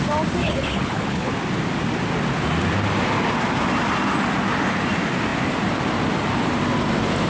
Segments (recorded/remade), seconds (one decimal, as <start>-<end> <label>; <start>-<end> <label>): 0.0-0.4 recorded; 0.4-1.3 remade; 1.3-7.3 recorded

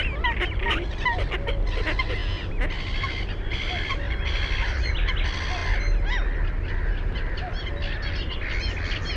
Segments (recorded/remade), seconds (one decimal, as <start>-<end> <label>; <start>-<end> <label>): 0.0-9.2 recorded

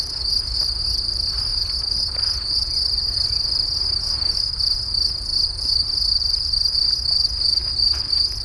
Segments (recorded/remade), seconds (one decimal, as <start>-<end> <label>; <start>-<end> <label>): 0.0-8.4 recorded

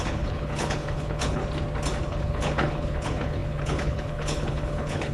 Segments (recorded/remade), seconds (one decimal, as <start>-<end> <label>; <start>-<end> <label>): 0.0-1.4 remade; 1.4-2.1 recorded; 2.1-5.1 remade

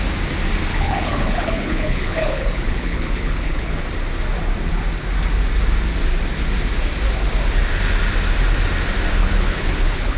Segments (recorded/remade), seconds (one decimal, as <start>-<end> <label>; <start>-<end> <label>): 0.0-0.7 recorded; 0.7-3.8 remade; 3.8-9.2 recorded; 9.2-10.2 remade

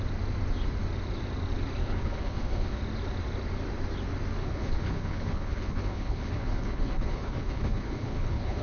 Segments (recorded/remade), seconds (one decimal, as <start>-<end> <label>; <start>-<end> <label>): 0.0-1.8 recorded; 1.8-2.8 remade; 2.8-4.4 recorded; 4.4-8.6 remade